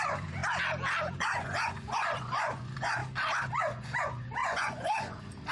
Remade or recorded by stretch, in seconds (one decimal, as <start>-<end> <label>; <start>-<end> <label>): 0.0-0.4 remade; 0.4-1.1 recorded; 1.1-3.0 remade; 3.0-3.5 recorded; 3.5-5.5 remade